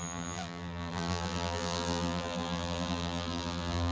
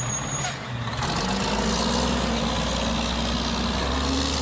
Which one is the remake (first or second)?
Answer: first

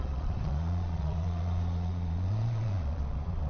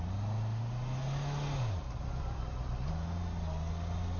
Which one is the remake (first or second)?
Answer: first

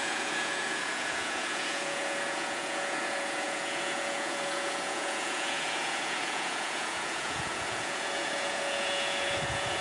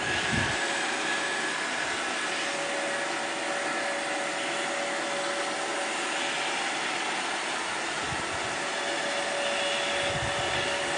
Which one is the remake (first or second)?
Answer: first